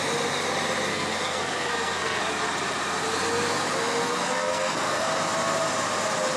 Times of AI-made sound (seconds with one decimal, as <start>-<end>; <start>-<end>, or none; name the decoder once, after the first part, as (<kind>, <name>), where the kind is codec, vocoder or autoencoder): 0.9-2.2 (codec, SNAC); 4.0-5.1